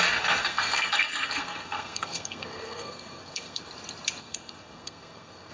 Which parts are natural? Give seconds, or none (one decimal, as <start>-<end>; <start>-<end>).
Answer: 0.0-0.4; 3.7-4.2